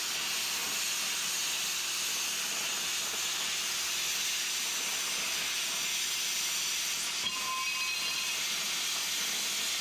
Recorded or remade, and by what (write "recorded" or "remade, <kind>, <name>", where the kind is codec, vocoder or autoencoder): recorded